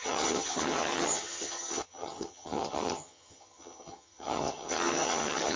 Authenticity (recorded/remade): remade